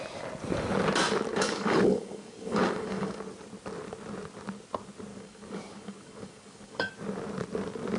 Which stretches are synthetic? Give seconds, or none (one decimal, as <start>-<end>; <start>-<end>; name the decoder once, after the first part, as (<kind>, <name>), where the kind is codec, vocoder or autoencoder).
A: 1.3-3.2 (codec, DAC); 5.1-6.9